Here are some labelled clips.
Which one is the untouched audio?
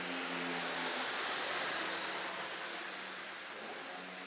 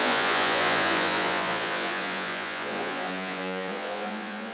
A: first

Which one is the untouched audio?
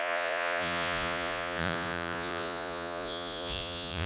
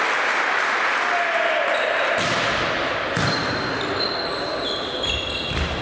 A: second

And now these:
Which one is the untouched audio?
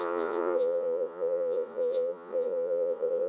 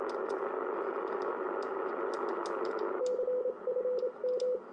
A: second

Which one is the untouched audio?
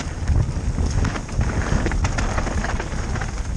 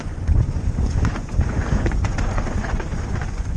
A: first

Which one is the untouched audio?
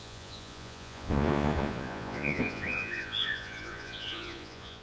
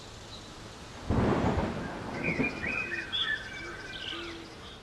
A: second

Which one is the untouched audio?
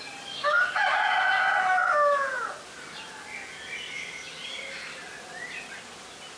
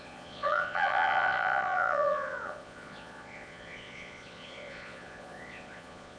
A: first